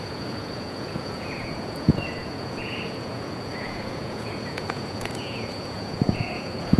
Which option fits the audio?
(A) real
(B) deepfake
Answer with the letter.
B